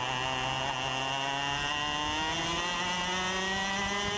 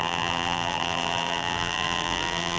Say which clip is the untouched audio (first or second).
first